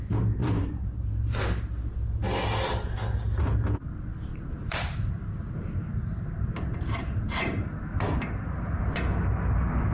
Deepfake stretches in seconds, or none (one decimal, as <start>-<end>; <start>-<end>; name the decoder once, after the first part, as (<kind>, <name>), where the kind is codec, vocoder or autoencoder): 0.4-1.7 (vocoder, BigVGAN v2); 4.3-8.8